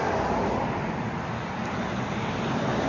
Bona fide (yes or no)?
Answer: yes